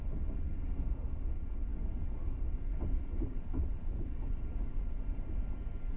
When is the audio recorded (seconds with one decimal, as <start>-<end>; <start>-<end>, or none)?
0.0-6.0